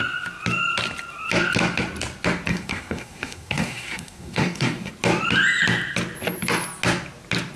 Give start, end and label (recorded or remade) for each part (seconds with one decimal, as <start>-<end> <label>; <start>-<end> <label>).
0.0-2.5 recorded; 2.5-4.9 remade; 4.9-7.6 recorded